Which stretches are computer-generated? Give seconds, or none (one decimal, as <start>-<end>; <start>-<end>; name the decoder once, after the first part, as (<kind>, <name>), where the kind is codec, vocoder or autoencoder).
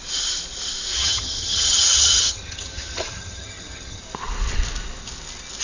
0.9-4.0 (vocoder, HiFi-GAN)